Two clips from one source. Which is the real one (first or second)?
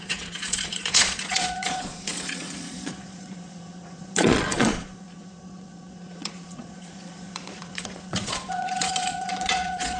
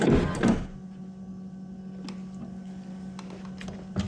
second